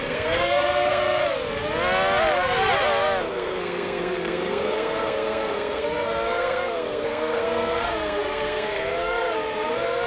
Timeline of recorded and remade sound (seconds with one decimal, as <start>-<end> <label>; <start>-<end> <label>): 0.0-1.2 remade; 1.2-3.2 recorded; 3.2-10.1 remade